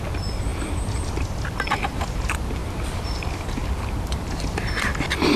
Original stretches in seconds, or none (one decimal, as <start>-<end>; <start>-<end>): 0.0-5.4